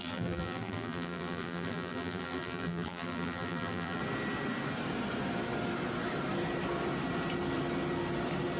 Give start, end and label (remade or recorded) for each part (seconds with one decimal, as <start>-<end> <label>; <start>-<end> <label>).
0.0-4.0 remade; 4.0-8.6 recorded